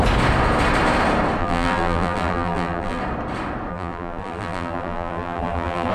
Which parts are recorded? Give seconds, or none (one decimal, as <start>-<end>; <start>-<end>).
0.0-1.4; 3.0-3.7